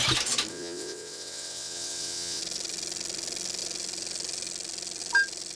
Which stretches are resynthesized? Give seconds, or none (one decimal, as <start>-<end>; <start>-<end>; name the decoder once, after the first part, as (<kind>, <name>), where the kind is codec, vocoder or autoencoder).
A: 0.5-2.4 (vocoder, WaveNeXt)